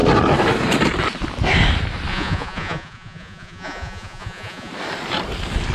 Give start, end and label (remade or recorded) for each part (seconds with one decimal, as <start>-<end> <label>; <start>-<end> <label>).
0.0-2.1 recorded; 2.1-4.7 remade; 4.7-5.7 recorded